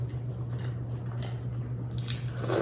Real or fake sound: real